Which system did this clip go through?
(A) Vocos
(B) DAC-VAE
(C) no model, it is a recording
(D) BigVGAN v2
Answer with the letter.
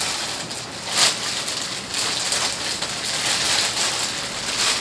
C